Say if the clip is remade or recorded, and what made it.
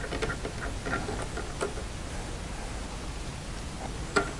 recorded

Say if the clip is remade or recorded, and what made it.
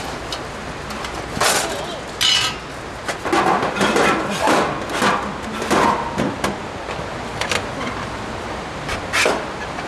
recorded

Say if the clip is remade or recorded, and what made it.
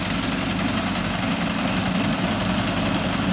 recorded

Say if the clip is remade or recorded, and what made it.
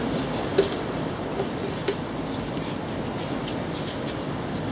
recorded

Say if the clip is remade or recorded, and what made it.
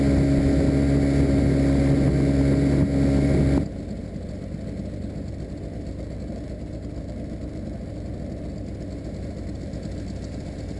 recorded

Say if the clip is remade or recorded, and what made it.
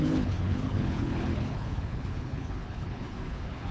remade, codec, HILCodec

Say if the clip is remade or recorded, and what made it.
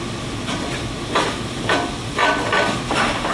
recorded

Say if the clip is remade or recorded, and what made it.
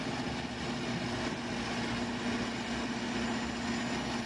recorded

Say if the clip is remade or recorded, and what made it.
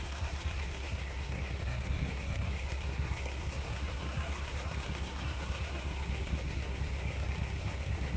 remade, codec, SNAC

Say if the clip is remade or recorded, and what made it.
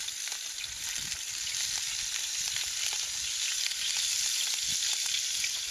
recorded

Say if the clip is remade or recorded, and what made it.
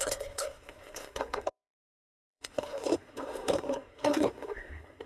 remade, codec, SNAC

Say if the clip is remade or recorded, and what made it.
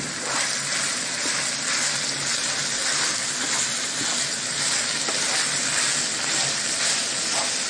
recorded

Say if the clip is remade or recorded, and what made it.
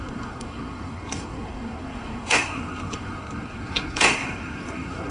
remade, codec, SNAC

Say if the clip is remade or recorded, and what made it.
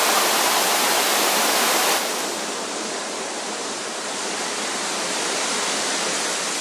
recorded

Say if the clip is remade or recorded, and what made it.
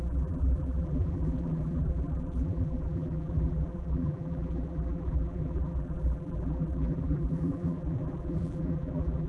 remade, vocoder, BigVGAN v2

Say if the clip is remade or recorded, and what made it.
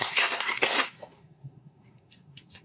remade, codec, SNAC